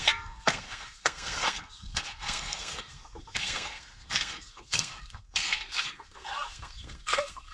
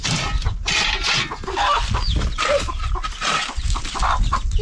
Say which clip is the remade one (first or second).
first